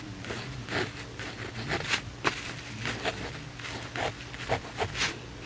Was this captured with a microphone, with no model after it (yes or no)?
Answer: yes